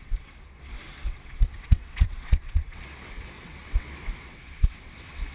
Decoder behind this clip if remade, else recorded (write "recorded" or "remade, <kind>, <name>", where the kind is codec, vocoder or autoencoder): remade, vocoder, WaveNeXt